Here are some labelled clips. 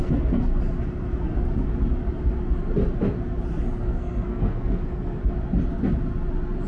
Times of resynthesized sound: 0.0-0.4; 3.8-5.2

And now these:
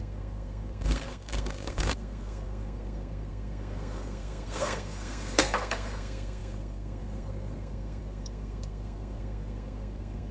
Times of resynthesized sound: 0.0-10.3

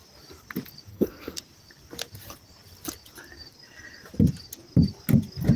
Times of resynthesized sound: 0.9-1.4

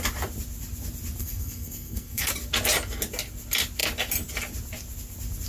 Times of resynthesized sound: 1.2-2.3

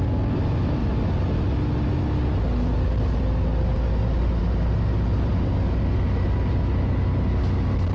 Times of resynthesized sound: none

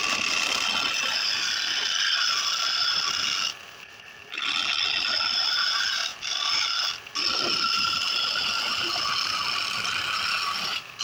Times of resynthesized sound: none